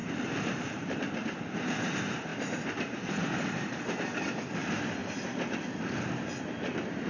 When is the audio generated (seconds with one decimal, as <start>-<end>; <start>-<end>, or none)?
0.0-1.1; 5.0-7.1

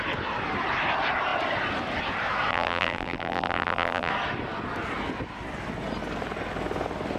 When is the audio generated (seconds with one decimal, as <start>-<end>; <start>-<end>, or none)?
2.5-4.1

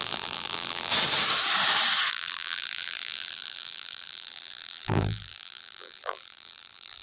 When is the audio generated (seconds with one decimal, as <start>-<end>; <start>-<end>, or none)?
0.0-0.9; 2.1-7.0

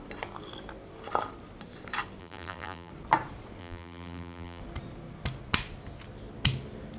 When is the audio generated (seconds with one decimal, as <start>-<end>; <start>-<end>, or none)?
2.2-2.9; 3.6-4.6

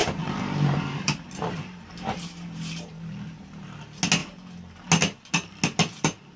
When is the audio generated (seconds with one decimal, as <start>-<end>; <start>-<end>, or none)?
0.0-3.8

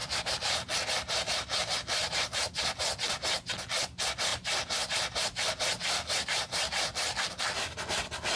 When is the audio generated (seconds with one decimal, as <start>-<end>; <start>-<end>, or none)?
0.0-0.5; 1.6-2.5; 4.3-7.4

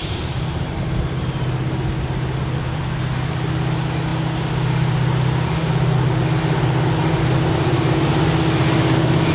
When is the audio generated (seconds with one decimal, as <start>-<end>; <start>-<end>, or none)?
0.0-1.2